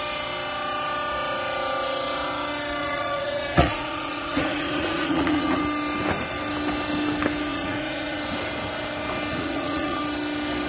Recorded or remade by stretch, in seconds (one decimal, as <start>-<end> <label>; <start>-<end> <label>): 0.0-2.8 recorded; 2.8-5.6 remade; 5.6-7.5 recorded; 7.5-8.2 remade; 8.2-9.3 recorded; 9.3-10.0 remade; 10.0-10.7 recorded